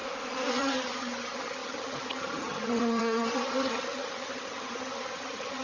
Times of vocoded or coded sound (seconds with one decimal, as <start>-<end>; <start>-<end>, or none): 0.5-5.6